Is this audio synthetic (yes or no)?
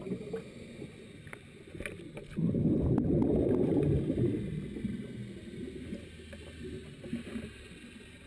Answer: no